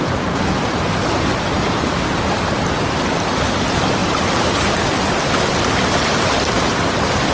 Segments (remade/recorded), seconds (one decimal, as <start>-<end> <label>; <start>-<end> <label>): 0.0-7.3 recorded